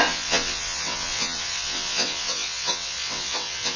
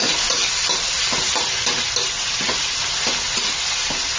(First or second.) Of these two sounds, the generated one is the first